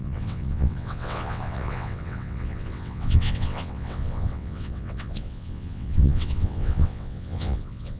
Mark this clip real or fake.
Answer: fake